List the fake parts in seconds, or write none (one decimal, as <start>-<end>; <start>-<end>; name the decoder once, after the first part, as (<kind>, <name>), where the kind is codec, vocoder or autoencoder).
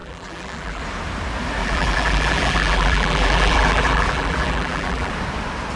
0.0-0.8 (vocoder, BigVGAN v2); 1.6-5.1